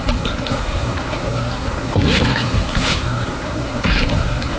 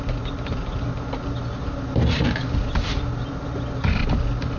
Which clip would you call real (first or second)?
second